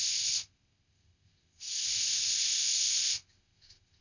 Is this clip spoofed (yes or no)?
yes